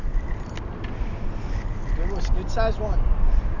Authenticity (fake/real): real